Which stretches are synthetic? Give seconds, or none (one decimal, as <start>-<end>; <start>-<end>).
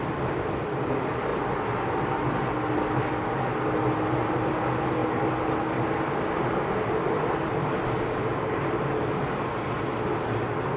none